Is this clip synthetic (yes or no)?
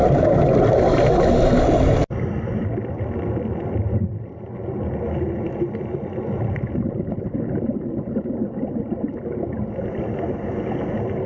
no